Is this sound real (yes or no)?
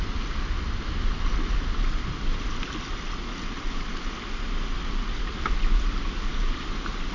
yes